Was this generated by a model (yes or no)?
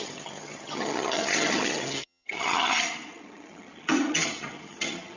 yes